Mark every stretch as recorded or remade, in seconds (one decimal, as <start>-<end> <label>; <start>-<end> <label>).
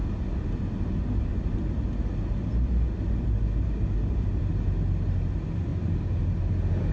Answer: 0.0-6.9 recorded